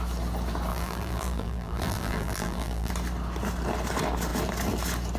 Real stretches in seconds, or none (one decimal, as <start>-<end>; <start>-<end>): 0.0-0.7; 2.9-5.2